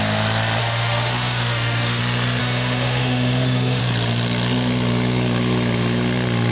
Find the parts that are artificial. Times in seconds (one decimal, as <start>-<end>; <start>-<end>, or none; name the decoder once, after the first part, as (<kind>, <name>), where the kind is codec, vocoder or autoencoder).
0.6-2.0 (autoencoder, DAC-VAE); 2.4-3.8